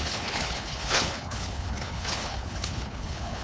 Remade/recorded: remade